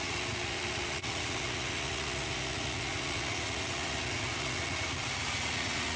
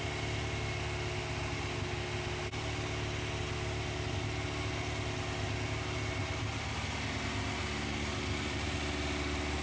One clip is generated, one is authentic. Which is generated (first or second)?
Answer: first